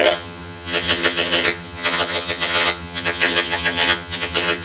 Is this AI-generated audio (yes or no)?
yes